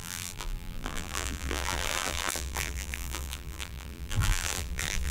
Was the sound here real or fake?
fake